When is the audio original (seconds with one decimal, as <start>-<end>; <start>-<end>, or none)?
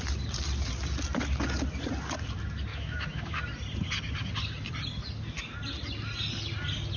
0.0-2.7; 3.4-7.0